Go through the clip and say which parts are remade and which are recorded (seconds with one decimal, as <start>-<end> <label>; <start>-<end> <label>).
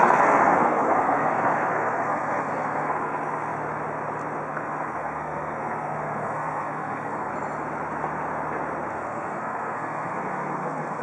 0.0-3.5 remade; 3.5-4.5 recorded; 4.5-7.3 remade; 7.3-8.9 recorded; 8.9-11.0 remade